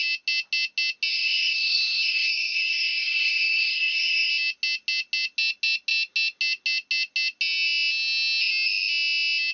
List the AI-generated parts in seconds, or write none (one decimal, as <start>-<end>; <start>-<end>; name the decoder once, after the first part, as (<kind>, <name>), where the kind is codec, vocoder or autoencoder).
1.1-4.3 (codec, DAC)